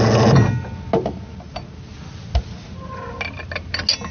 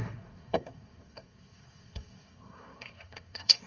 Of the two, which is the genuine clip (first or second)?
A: first